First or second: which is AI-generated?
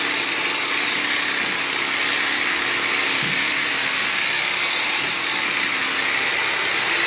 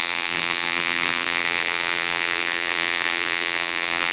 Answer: second